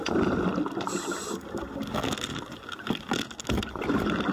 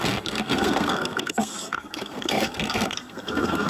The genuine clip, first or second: first